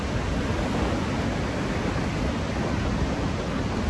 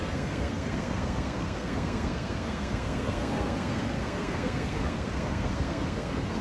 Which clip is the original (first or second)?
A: first